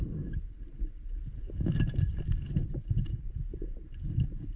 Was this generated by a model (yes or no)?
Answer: no